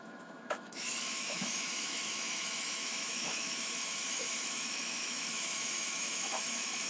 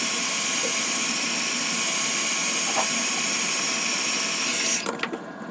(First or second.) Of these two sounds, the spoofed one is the first